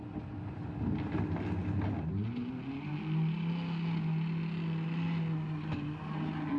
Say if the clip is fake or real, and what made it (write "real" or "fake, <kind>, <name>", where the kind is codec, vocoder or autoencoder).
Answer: real